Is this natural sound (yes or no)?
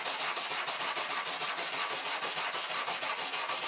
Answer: yes